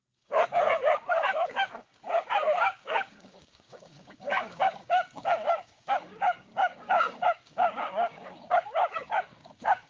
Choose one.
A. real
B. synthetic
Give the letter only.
B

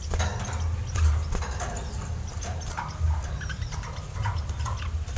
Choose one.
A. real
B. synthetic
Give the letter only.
A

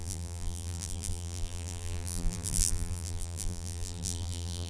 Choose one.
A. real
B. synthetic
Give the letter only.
B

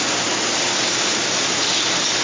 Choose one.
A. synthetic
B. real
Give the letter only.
B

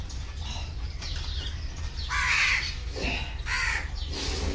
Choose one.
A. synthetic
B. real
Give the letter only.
B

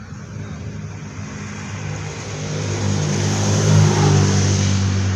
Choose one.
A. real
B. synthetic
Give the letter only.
A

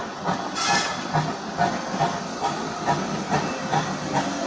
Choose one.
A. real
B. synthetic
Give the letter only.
A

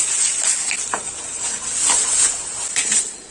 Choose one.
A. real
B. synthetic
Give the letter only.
A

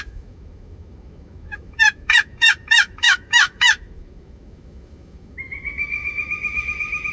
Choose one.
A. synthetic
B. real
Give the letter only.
A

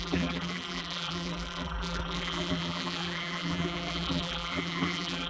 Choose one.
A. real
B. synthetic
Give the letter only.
B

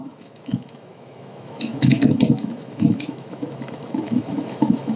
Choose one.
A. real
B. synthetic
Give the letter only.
B